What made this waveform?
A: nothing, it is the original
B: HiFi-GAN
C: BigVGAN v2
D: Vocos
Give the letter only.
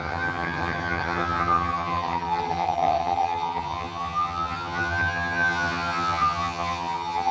B